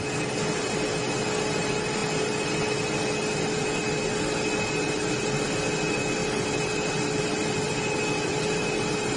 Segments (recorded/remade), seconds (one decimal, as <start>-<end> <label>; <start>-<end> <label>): 0.0-9.2 recorded

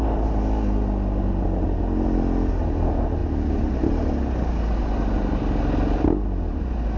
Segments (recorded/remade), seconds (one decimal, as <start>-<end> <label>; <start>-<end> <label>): 0.0-7.0 recorded

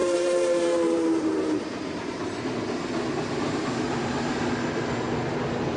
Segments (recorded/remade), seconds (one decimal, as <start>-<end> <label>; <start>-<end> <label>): 0.0-2.2 remade; 2.2-3.3 recorded; 3.3-4.3 remade; 4.3-5.8 recorded

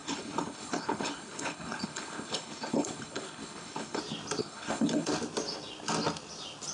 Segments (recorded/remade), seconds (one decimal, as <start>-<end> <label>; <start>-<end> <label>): 0.0-4.0 remade; 4.0-4.4 recorded; 4.4-5.1 remade; 5.1-6.7 recorded